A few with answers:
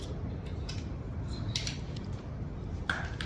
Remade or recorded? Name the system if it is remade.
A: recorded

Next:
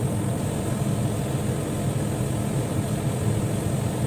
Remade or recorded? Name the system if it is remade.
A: recorded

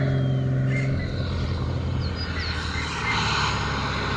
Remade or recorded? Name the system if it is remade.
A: recorded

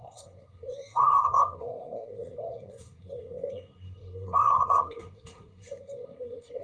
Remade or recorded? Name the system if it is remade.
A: remade, codec, SNAC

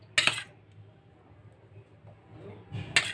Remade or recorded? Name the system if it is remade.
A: recorded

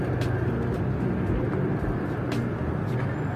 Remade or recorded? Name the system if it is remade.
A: recorded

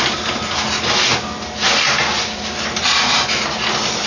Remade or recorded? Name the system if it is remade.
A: recorded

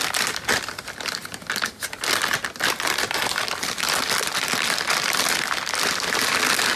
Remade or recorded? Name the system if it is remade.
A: recorded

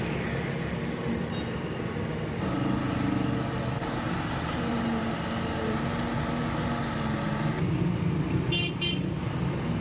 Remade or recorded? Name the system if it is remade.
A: recorded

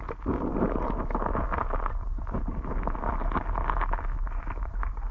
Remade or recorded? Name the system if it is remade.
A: recorded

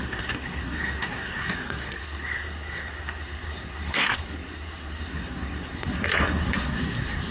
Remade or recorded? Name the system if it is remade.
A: remade, codec, SNAC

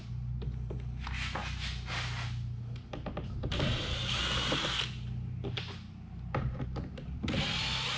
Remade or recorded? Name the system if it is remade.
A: recorded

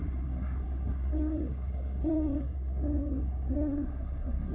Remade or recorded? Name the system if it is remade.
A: remade, codec, SNAC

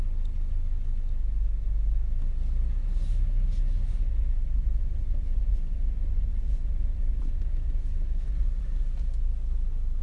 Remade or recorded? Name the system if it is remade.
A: recorded